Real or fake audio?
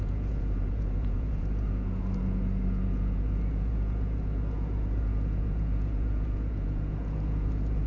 fake